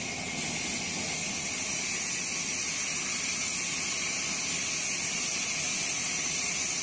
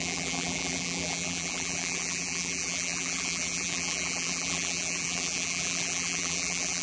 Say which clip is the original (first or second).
first